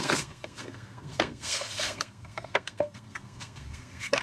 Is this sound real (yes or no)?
no